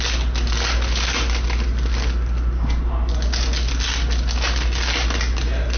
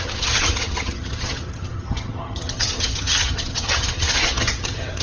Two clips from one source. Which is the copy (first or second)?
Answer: second